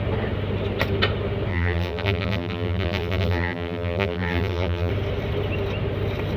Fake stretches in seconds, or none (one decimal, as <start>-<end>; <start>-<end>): 1.5-4.9